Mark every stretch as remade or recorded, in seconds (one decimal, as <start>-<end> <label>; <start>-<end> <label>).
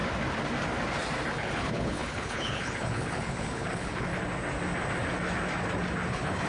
0.0-1.3 recorded; 1.3-4.1 remade; 4.1-6.1 recorded; 6.1-6.5 remade